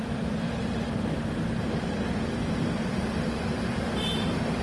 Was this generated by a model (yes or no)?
yes